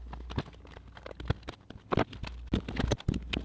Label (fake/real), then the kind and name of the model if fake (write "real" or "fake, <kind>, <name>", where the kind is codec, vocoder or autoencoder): real